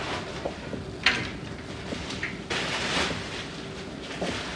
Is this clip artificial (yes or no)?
no